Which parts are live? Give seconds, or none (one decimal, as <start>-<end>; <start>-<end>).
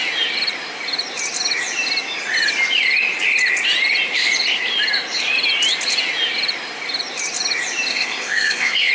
0.0-7.9